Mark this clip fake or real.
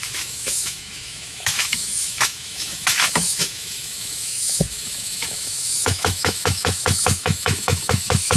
fake